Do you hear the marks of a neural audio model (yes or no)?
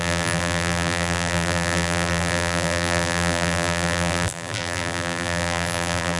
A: yes